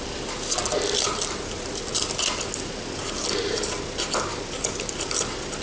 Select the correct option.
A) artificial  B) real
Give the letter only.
B